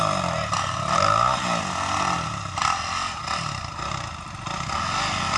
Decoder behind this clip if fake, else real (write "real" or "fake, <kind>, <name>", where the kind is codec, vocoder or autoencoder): real